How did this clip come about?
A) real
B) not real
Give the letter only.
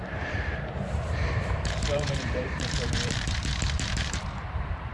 B